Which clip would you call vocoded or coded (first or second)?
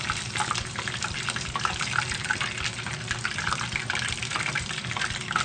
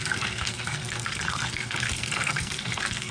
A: second